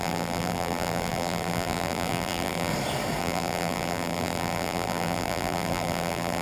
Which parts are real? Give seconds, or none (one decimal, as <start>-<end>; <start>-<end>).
2.7-3.2